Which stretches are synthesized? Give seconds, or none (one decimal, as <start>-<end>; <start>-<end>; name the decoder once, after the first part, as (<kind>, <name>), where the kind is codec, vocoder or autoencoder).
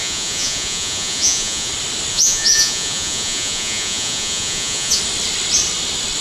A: 0.0-1.7 (vocoder, Vocos); 2.1-5.0